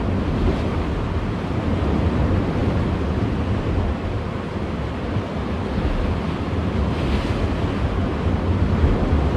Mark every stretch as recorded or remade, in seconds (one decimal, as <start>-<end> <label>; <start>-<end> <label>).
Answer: 0.0-9.4 recorded